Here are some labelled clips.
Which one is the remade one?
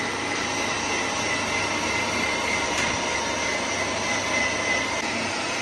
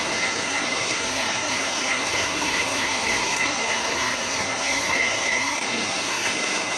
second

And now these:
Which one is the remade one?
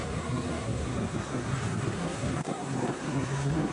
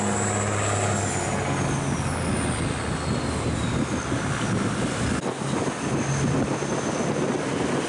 first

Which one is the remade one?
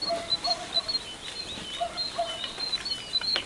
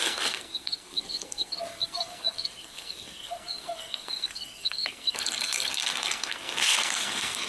second